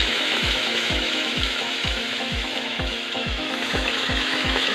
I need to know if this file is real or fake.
fake